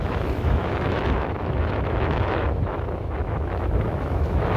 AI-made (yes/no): yes